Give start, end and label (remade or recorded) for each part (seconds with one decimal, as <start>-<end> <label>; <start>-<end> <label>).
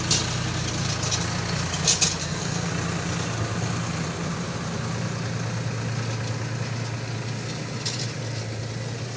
0.0-2.2 recorded; 2.2-2.7 remade; 2.7-9.2 recorded